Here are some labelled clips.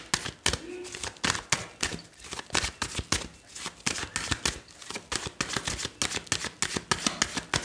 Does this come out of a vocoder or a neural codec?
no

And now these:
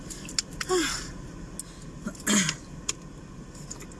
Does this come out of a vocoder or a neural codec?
no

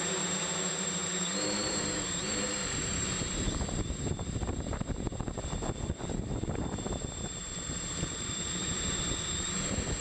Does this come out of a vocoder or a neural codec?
yes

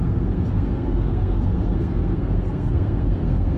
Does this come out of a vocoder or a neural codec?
yes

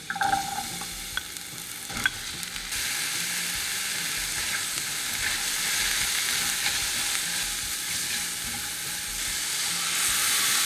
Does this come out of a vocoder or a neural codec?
no